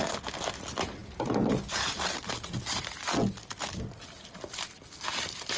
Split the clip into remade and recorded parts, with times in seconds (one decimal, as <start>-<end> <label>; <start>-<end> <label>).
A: 0.0-5.6 recorded